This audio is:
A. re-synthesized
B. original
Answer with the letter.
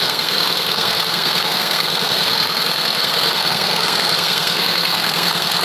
A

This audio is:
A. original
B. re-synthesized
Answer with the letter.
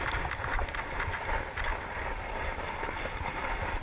A